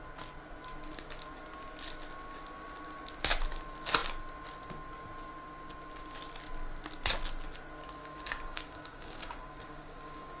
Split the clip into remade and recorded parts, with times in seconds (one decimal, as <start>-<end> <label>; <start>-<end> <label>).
0.0-8.0 recorded; 8.0-10.4 remade